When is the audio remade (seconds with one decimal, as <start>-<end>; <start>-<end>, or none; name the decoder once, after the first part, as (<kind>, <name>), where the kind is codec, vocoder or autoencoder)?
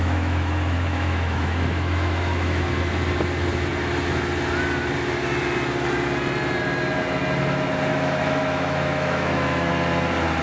0.0-2.7 (autoencoder, DAC-VAE); 7.9-9.7